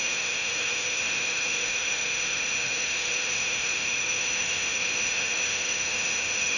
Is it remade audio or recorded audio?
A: remade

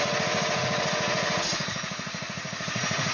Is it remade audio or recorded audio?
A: remade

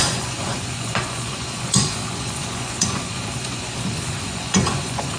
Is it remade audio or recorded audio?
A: remade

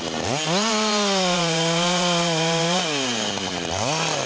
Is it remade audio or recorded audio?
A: remade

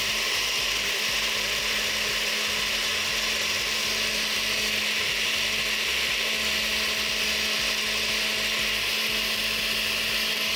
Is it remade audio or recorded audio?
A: recorded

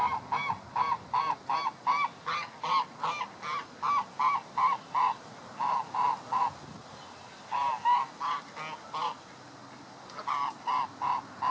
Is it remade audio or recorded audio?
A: recorded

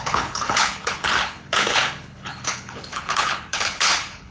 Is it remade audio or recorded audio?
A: remade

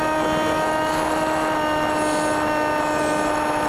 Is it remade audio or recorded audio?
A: recorded